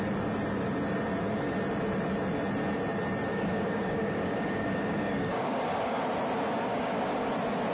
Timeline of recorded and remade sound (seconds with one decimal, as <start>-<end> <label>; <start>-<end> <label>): 0.0-3.3 recorded; 3.3-6.0 remade; 6.0-6.7 recorded; 6.7-7.3 remade; 7.3-7.7 recorded